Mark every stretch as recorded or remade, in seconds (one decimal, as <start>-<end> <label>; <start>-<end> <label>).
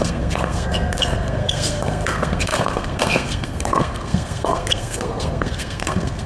0.0-6.3 remade